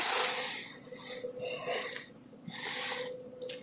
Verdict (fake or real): real